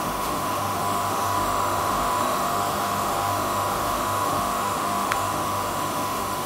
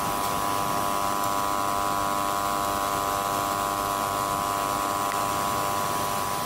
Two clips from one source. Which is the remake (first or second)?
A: first